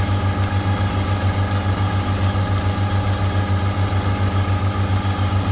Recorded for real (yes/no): yes